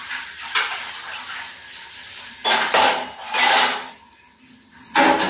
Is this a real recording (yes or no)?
yes